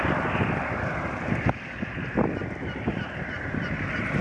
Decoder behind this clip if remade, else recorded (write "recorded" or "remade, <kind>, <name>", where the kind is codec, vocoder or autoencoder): recorded